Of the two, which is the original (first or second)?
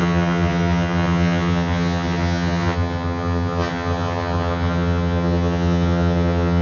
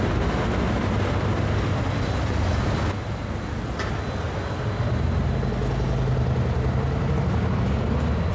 second